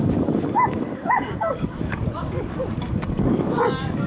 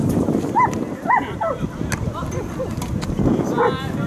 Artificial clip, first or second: first